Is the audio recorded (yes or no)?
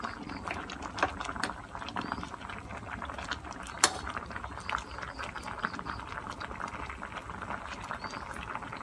yes